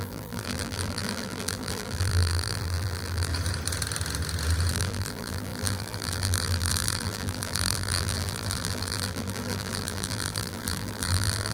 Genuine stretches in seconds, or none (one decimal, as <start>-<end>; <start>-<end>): 3.3-4.7